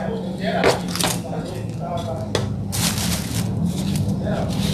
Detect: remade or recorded recorded